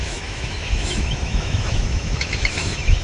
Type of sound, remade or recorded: remade